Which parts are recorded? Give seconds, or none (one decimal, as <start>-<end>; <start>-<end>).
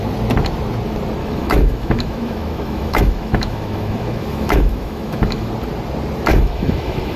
0.0-1.2; 5.5-6.3